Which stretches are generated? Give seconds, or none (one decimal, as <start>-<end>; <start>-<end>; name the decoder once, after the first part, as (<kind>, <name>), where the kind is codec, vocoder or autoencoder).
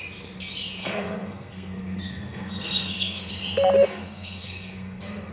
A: 0.8-3.3 (codec, SNAC); 3.9-5.3